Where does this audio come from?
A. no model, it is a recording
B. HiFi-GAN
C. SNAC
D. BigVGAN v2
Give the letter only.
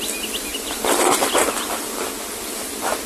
A